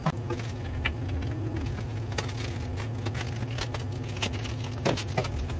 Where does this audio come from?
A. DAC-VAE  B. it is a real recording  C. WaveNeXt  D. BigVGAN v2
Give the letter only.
B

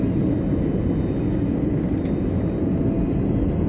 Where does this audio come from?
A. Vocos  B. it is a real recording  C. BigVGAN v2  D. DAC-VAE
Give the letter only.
B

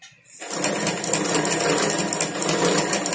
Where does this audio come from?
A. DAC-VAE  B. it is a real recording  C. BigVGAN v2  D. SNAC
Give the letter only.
B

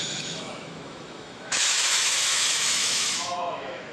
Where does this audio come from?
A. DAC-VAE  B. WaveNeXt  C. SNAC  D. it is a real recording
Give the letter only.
A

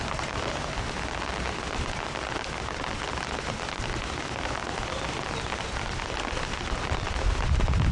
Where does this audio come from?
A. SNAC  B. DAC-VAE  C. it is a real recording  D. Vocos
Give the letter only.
C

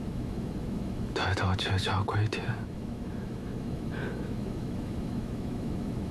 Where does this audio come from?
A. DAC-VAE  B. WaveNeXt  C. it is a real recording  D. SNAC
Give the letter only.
A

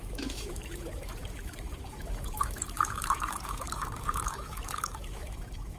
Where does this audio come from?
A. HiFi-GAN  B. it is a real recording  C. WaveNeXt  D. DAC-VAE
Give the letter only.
D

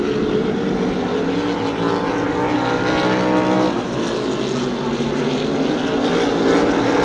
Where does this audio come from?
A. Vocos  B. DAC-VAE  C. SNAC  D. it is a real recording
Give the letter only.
D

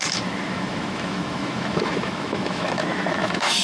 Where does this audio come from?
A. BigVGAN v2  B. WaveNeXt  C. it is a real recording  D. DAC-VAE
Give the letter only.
D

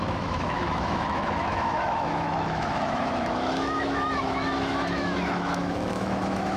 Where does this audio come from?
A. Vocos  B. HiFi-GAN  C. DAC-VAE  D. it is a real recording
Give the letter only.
C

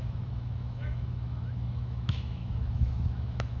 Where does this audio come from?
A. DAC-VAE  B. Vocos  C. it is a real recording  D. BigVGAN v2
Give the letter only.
A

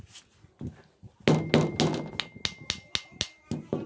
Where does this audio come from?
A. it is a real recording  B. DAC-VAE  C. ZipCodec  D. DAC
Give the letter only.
A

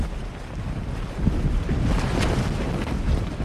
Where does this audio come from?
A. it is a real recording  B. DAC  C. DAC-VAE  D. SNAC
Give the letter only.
A